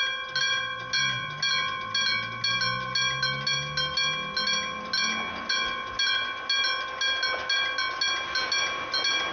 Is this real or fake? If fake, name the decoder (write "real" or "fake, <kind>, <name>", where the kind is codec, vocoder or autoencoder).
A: real